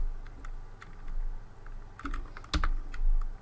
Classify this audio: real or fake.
real